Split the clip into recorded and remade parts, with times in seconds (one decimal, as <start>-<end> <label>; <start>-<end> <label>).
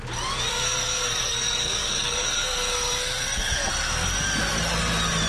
0.0-0.5 recorded; 0.5-3.7 remade; 3.7-5.3 recorded